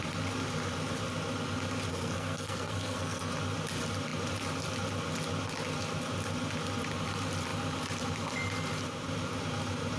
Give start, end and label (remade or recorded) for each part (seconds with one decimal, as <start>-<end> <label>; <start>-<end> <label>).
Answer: 0.0-1.9 recorded; 1.9-3.3 remade; 3.3-10.0 recorded